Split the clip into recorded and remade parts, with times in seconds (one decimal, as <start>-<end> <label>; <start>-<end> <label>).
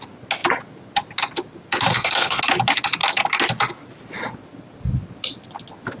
0.0-1.9 recorded; 1.9-2.4 remade; 2.4-6.0 recorded